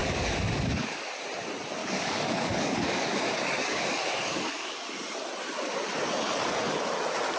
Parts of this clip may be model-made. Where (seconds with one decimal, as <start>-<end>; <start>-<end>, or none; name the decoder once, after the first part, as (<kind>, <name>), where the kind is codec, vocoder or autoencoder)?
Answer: 0.0-1.2 (codec, DAC); 1.8-4.8